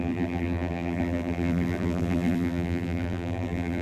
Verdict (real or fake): fake